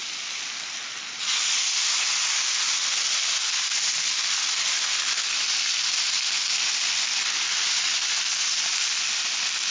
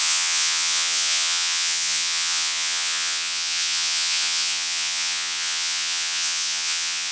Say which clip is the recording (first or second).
first